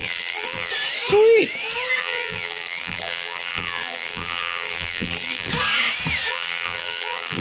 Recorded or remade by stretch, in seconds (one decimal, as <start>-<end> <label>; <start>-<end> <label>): 0.0-0.7 remade; 0.7-2.0 recorded; 2.0-5.5 remade; 5.5-6.3 recorded; 6.3-7.4 remade